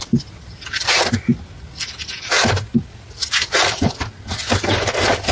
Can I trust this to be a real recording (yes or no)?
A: yes